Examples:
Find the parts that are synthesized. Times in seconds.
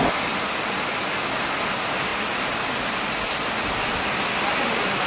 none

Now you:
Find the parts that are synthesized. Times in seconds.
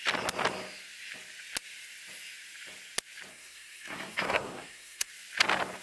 3.3-5.1 (codec, SNAC)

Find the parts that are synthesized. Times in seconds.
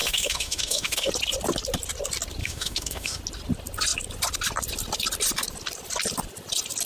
0.0-1.1 (autoencoder, DAC-VAE); 2.4-3.2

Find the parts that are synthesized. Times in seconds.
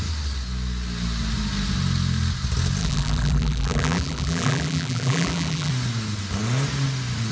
2.8-5.7 (vocoder, BigVGAN v2)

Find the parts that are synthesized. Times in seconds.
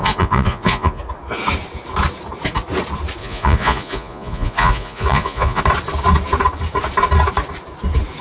0.0-1.0 (vocoder, Vocos); 3.2-5.6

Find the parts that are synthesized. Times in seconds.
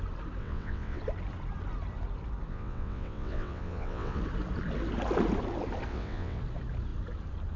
0.4-1.0 (vocoder, WaveNeXt); 2.5-4.2; 5.9-6.4